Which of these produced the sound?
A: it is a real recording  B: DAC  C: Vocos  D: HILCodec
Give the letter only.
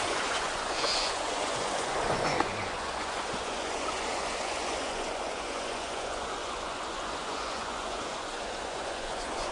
C